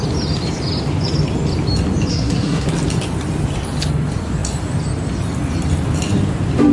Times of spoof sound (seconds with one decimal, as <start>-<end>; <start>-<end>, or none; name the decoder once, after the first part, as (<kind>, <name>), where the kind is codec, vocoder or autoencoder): 2.1-2.7 (codec, SNAC)